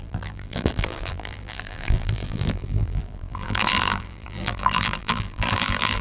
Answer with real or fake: fake